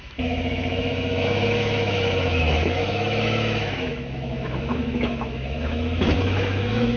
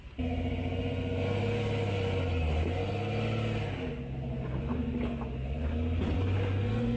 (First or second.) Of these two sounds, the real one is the second